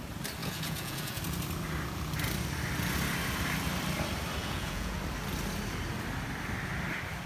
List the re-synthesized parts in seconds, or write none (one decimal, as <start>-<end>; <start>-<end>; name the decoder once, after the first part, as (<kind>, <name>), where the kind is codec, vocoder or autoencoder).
0.4-1.2 (vocoder, Vocos); 4.4-5.0